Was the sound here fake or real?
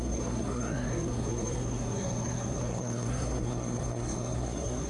fake